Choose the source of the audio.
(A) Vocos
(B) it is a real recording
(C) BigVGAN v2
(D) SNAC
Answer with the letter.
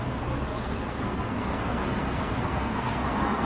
D